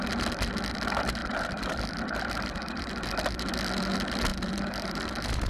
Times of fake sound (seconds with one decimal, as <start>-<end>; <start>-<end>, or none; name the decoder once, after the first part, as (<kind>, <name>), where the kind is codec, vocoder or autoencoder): 1.2-3.1 (vocoder, BigVGAN v2); 4.3-5.5

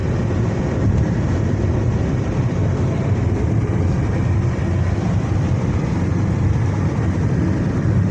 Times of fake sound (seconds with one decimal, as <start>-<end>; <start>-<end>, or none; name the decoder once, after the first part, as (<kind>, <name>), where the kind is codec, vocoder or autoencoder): 0.8-8.1 (vocoder, BigVGAN v2)